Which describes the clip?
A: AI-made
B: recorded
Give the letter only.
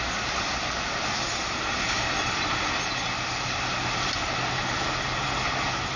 B